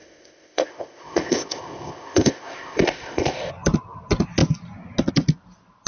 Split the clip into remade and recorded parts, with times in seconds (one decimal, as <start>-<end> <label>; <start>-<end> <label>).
0.0-3.5 remade; 3.5-5.9 recorded